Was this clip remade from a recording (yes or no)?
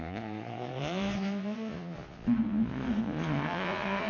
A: yes